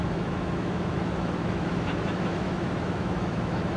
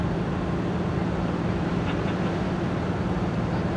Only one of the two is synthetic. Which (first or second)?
first